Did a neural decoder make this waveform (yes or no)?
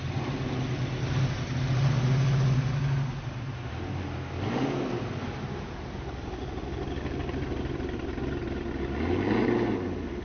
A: no